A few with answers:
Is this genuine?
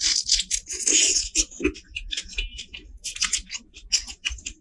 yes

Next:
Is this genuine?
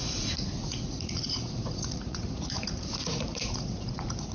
no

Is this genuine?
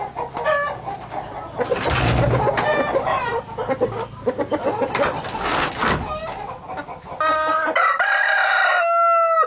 yes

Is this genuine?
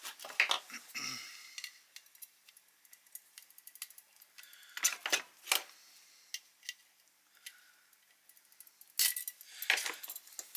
yes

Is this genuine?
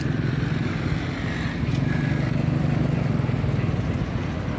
yes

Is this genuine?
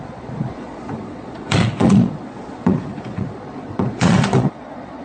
no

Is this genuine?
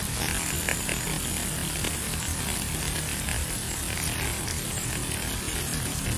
yes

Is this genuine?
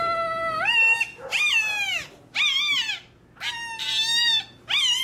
yes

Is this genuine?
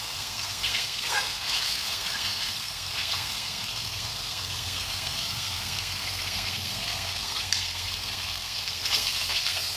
no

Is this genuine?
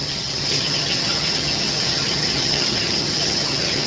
no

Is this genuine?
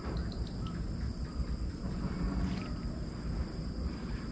yes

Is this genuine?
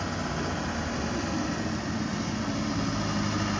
yes